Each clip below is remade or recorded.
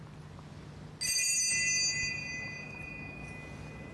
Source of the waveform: recorded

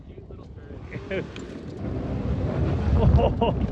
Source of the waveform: recorded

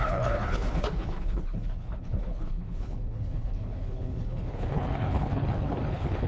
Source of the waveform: remade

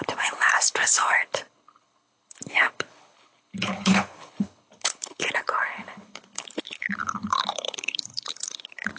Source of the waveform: remade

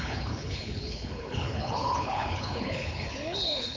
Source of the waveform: remade